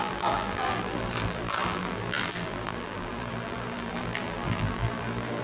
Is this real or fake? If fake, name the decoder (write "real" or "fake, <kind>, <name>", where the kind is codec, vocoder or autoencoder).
fake, vocoder, BigVGAN v2